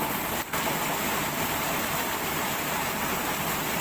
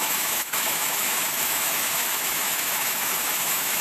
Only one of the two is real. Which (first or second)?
first